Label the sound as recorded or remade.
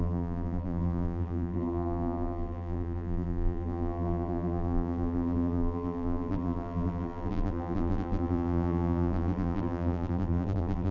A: remade